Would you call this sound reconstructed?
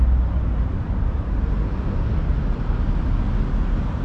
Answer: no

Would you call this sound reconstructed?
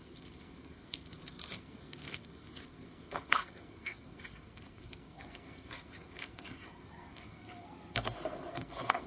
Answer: yes